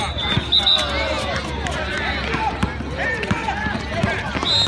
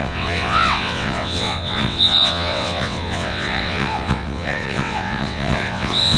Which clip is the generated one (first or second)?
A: second